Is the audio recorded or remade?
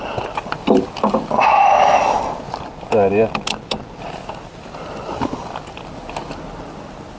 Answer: recorded